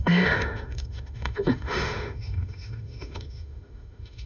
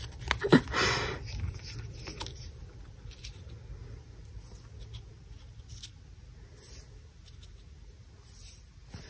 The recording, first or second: second